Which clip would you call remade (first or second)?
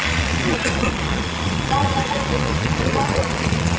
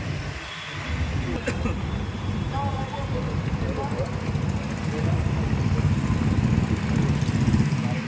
first